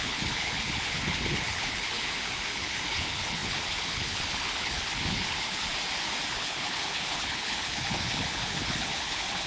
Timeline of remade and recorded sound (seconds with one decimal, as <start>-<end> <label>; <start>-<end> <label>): 0.0-5.7 remade; 5.7-6.3 recorded; 6.3-9.5 remade